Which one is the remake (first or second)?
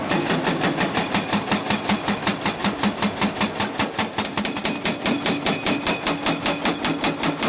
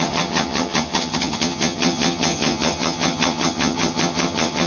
second